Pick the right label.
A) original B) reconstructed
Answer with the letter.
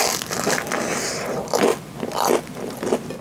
A